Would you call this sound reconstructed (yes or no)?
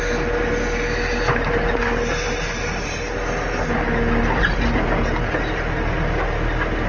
no